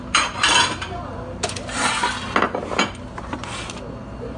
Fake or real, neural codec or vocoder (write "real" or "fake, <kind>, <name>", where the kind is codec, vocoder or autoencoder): real